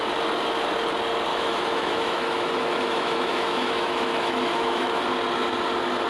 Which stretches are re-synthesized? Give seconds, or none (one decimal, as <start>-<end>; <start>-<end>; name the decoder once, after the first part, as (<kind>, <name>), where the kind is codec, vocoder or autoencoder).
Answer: 1.3-5.0 (autoencoder, DAC-VAE)